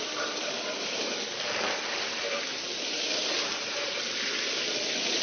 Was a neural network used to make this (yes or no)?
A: no